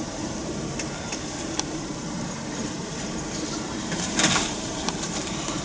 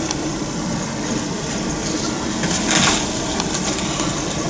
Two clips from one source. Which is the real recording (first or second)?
second